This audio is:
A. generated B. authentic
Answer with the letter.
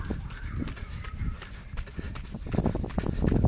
B